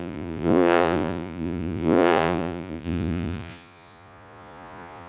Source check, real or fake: fake